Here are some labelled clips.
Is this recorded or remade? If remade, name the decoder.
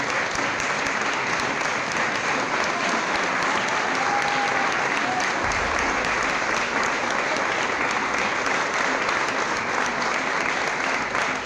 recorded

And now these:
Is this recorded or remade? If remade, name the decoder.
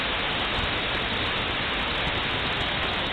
recorded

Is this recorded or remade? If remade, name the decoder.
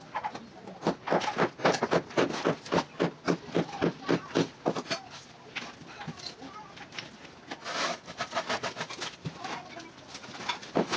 recorded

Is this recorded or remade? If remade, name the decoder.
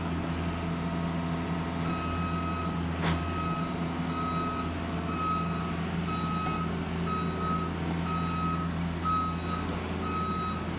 recorded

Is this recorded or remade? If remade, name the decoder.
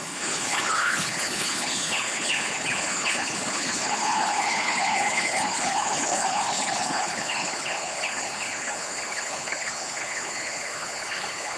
remade, codec, HILCodec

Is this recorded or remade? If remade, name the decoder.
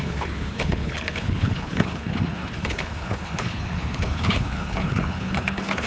remade, codec, HILCodec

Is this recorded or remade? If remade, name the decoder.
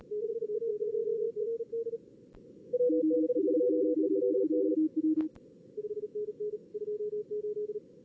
recorded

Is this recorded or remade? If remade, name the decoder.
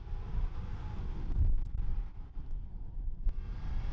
recorded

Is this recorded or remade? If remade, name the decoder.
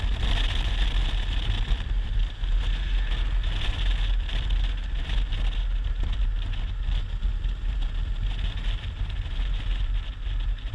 recorded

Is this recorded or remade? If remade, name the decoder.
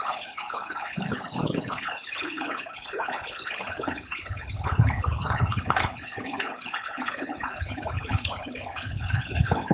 remade, codec, HILCodec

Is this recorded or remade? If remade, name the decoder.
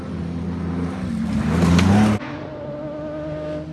recorded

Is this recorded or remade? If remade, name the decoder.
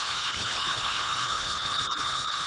remade, codec, HILCodec